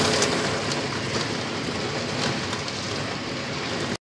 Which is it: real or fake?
real